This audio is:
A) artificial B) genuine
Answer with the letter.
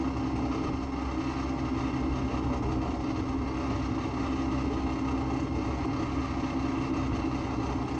B